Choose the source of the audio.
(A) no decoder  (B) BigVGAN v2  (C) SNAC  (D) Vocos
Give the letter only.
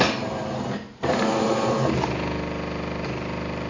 A